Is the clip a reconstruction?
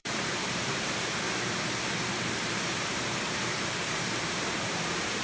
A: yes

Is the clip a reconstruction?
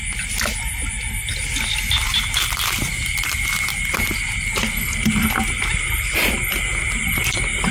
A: no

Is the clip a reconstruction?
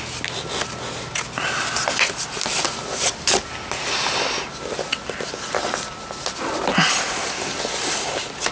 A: no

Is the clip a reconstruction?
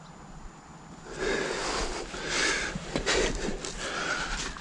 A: no